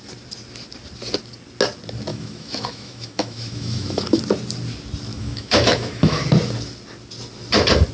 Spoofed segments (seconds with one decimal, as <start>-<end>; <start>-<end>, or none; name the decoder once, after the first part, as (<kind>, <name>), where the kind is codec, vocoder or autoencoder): 2.1-4.2 (autoencoder, DAC-VAE); 5.1-6.2